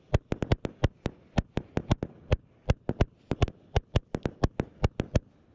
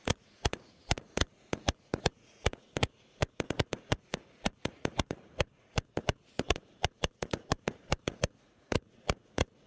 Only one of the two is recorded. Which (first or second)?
first